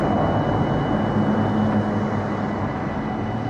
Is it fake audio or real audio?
real